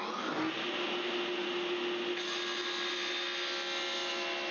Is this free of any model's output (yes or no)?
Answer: yes